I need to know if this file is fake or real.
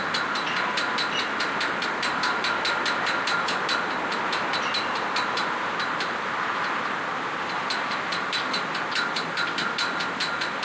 real